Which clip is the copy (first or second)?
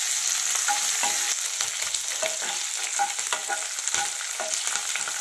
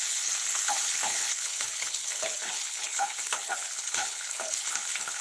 second